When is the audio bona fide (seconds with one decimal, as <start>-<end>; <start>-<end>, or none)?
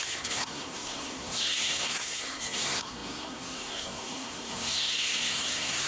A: none